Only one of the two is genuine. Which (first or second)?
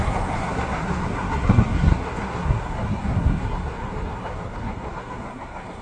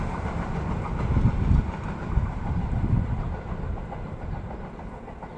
second